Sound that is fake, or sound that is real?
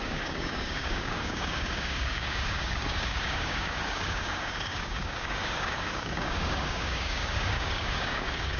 fake